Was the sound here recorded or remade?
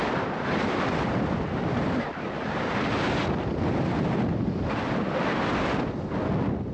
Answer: recorded